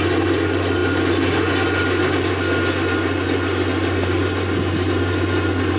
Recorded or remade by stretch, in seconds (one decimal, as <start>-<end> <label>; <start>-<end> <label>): 0.0-5.8 recorded